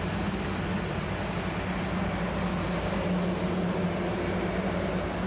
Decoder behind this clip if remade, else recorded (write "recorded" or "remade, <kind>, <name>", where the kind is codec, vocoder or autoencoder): recorded